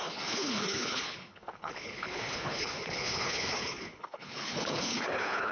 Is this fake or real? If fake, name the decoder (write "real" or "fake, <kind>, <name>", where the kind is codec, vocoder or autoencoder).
fake, codec, HILCodec